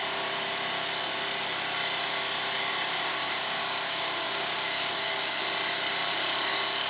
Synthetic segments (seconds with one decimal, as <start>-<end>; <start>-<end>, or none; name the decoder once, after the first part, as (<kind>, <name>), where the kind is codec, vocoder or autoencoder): 3.1-5.4 (codec, DAC)